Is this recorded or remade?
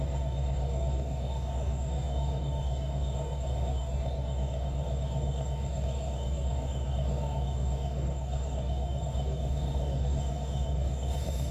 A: remade